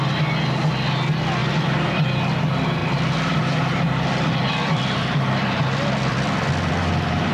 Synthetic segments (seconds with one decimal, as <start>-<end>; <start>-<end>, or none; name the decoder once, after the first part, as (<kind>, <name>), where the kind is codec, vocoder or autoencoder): 1.4-2.0 (vocoder, BigVGAN v2); 2.8-7.3